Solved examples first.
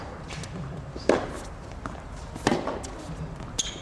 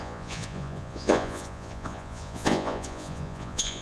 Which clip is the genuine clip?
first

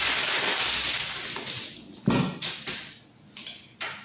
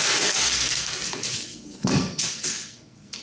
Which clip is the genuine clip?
first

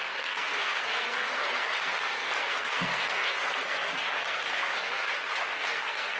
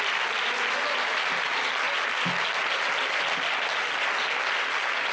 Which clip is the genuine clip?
second